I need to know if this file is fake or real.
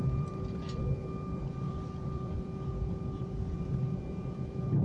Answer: fake